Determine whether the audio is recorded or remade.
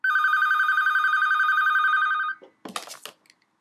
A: recorded